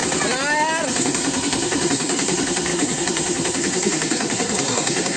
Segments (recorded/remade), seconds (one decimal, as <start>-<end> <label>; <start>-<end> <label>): 0.0-0.9 recorded; 0.9-5.2 remade